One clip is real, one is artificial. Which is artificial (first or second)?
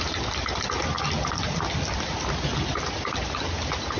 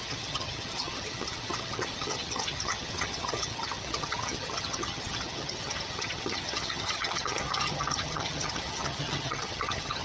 second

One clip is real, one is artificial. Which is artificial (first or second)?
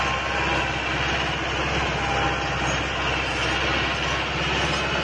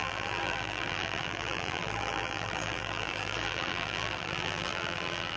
second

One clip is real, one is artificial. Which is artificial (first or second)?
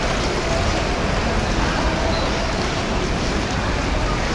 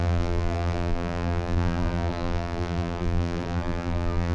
second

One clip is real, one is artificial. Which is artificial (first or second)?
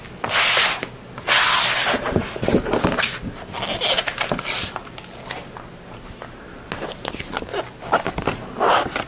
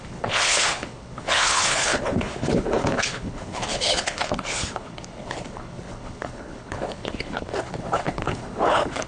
second